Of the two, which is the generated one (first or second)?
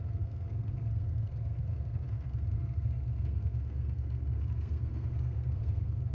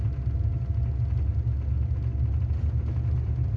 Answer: first